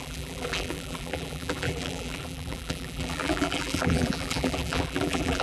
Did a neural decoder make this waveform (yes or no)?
yes